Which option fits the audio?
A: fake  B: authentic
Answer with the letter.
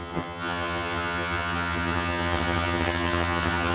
A